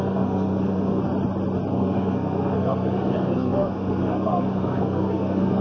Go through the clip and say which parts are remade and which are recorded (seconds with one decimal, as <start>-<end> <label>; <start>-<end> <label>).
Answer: 0.0-1.1 remade; 1.1-1.7 recorded; 1.7-5.6 remade

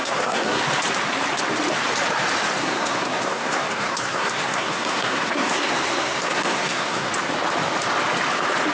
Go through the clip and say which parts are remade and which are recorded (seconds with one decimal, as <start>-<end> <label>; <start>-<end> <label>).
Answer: 0.0-0.6 remade; 0.6-2.6 recorded; 2.6-7.1 remade; 7.1-8.7 recorded

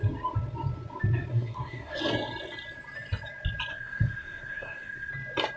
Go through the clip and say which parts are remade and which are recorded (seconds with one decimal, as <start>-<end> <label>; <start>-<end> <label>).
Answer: 0.0-1.3 recorded; 1.3-2.0 remade; 2.0-3.7 recorded; 3.7-5.1 remade; 5.1-5.6 recorded

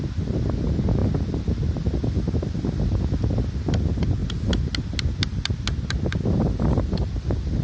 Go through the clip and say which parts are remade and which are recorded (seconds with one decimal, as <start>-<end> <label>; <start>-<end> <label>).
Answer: 0.0-7.6 recorded

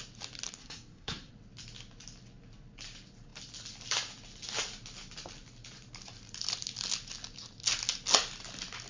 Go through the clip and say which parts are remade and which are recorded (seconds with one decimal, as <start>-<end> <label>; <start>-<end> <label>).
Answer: 0.0-0.6 recorded; 0.6-1.3 remade; 1.3-8.9 recorded

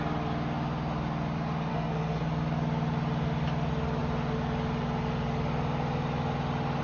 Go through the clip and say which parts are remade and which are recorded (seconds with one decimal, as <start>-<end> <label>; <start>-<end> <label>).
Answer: 0.0-1.7 recorded; 1.7-2.2 remade; 2.2-6.8 recorded

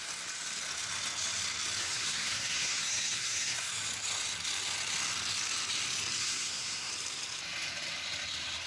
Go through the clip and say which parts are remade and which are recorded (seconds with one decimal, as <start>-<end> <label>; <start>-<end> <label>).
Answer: 0.0-1.8 recorded; 1.8-3.7 remade; 3.7-6.2 recorded; 6.2-6.9 remade; 6.9-8.7 recorded

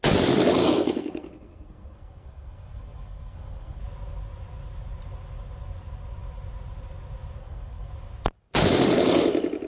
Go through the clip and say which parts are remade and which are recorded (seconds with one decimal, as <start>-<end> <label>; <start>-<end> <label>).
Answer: 0.0-0.6 recorded; 0.6-3.8 remade; 3.8-7.4 recorded; 7.4-7.9 remade; 7.9-9.7 recorded